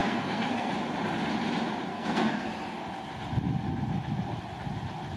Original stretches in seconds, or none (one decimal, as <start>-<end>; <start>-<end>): 0.7-1.9; 2.5-5.2